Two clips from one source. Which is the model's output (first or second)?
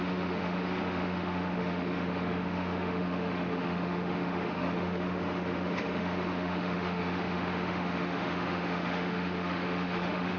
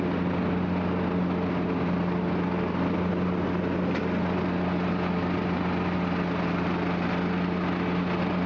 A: first